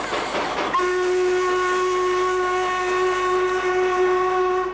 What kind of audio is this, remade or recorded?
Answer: recorded